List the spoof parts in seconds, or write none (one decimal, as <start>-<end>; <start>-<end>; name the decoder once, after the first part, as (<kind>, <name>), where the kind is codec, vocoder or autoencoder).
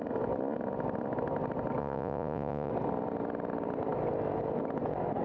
1.8-2.7 (vocoder, Vocos)